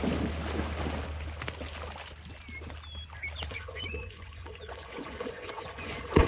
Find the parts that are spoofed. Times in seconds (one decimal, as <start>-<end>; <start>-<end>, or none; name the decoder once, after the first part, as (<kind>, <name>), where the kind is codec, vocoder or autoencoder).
3.5-6.3 (vocoder, Vocos)